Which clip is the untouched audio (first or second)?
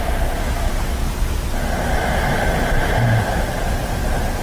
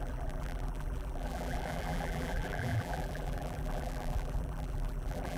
first